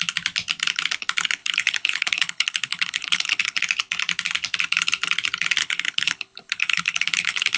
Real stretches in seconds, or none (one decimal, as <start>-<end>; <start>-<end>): 0.0-1.4; 3.6-5.6